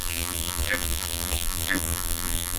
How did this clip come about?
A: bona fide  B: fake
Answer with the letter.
B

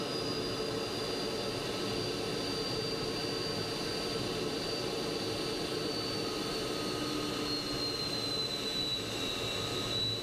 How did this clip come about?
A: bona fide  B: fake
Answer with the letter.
A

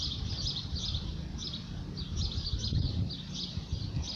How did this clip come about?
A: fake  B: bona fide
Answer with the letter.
B